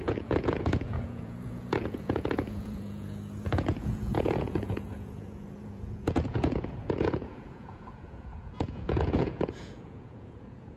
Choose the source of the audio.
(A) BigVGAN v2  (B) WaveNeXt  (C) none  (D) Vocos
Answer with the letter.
D